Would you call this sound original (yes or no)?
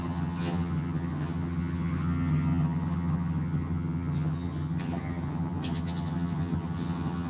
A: no